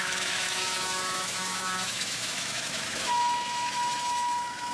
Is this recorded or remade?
remade